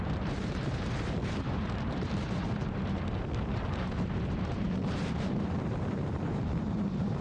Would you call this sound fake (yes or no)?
yes